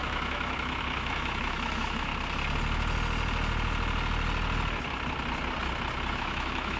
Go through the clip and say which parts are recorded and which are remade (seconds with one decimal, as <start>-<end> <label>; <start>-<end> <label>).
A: 0.0-2.1 remade; 2.1-6.1 recorded; 6.1-6.8 remade